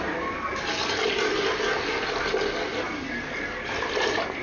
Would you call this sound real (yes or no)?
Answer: yes